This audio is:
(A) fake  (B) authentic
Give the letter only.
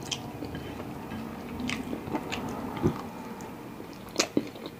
B